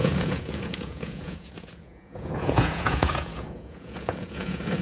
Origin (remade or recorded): remade